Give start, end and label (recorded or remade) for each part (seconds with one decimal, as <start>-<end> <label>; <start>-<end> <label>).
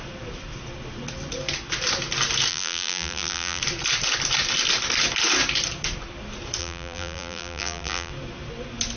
0.0-2.5 recorded; 2.5-3.6 remade; 3.6-6.6 recorded; 6.6-8.1 remade; 8.1-9.0 recorded